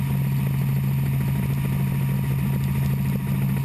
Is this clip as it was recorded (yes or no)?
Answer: yes